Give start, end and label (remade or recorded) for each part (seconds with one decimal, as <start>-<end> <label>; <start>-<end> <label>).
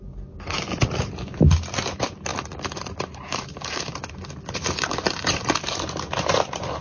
0.0-0.7 recorded; 0.7-1.4 remade; 1.4-2.3 recorded; 2.3-5.6 remade; 5.6-6.8 recorded